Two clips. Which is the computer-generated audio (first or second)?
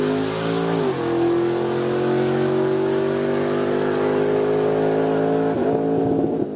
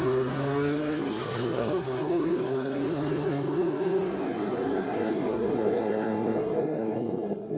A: second